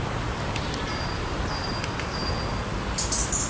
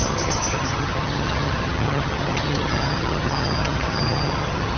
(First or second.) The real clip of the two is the first